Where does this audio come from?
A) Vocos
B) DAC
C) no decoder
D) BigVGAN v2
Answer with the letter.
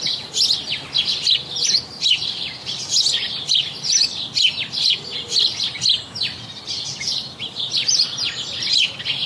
C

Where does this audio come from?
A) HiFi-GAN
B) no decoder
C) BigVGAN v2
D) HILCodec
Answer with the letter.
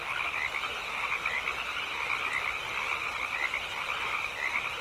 B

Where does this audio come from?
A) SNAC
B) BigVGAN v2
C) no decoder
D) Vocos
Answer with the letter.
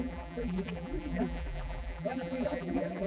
B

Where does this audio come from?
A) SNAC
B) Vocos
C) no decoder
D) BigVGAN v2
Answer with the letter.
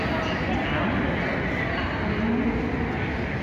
C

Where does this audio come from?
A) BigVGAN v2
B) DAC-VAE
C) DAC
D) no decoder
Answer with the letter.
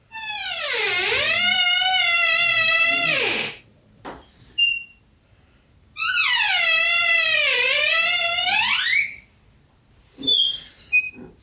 A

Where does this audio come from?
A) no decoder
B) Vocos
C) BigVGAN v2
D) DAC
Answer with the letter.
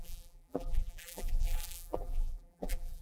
C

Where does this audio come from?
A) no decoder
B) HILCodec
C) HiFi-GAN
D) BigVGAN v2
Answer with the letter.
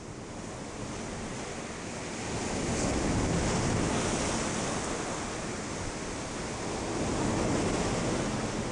A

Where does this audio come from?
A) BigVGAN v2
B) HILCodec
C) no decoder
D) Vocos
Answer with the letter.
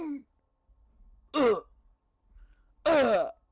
C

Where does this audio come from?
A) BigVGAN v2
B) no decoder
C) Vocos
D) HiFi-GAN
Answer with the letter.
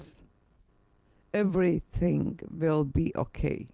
A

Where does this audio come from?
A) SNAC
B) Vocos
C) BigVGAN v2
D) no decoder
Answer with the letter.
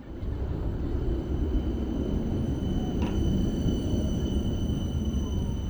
D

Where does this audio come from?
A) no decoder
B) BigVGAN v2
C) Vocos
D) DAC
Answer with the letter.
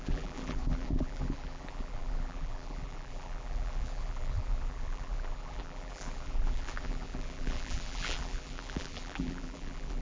B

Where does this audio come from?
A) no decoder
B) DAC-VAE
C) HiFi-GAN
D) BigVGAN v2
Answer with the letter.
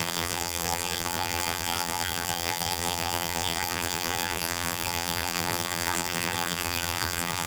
D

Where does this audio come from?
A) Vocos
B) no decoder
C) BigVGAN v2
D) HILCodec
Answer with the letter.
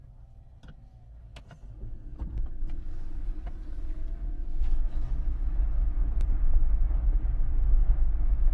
B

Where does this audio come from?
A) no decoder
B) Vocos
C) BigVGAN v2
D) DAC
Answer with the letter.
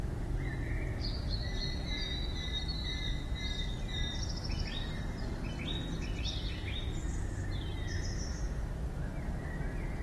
A